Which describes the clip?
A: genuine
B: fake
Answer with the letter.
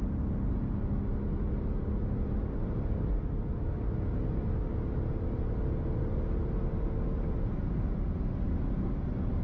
A